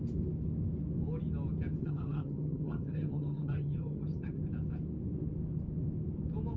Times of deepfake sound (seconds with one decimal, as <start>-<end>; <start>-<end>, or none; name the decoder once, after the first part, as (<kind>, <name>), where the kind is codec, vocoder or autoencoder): 1.8-4.4 (vocoder, HiFi-GAN)